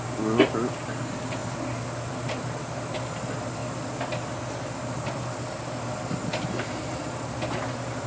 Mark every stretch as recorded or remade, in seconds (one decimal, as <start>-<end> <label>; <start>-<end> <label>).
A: 0.0-8.1 recorded